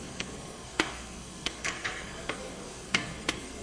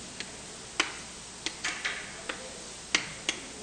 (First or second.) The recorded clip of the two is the second